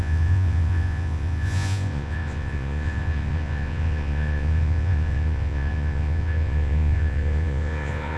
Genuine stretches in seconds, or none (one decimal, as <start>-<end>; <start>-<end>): none